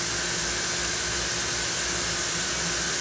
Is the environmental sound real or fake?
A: real